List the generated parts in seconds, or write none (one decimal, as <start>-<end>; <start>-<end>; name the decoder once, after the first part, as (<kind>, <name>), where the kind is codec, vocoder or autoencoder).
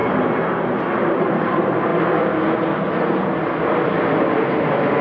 1.1-1.9 (vocoder, BigVGAN v2)